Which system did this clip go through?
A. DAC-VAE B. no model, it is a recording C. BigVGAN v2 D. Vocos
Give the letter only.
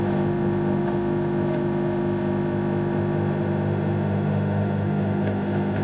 A